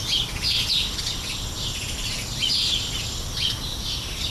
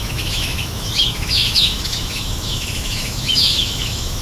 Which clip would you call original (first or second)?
first